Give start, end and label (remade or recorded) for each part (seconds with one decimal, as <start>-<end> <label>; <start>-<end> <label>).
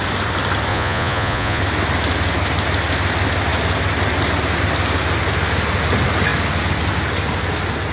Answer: 0.0-0.7 recorded; 0.7-1.6 remade; 1.6-7.9 recorded